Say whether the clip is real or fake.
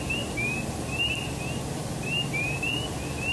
real